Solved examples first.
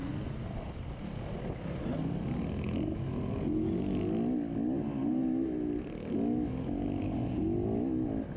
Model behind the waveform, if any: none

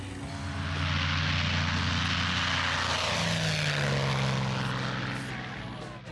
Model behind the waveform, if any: none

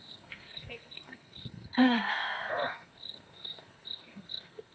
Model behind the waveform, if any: codec, SNAC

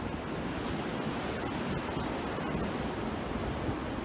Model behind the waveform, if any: none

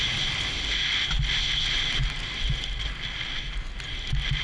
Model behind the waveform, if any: none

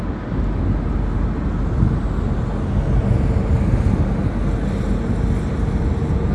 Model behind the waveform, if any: none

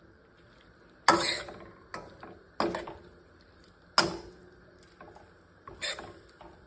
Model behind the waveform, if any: none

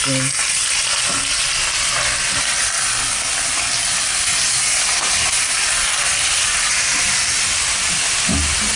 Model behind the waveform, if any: none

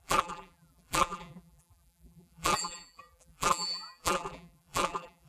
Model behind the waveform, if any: vocoder, BigVGAN v2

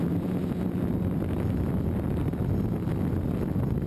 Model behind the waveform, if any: none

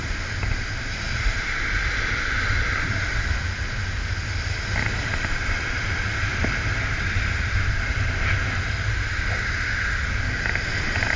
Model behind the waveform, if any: none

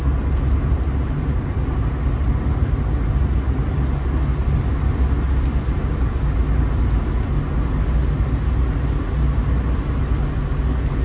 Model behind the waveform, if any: none